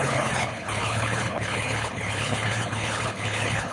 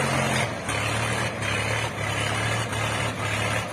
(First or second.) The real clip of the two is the second